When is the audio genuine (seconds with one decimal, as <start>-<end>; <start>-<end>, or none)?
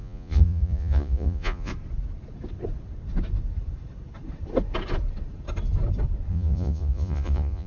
1.7-6.3